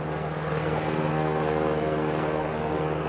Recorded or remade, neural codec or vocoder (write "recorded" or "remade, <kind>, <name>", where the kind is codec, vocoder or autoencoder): remade, codec, SNAC